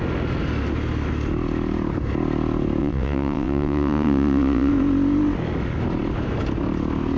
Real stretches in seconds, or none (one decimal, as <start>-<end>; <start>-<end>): 0.0-2.8; 4.7-7.2